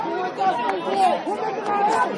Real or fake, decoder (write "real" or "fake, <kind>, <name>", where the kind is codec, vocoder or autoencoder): real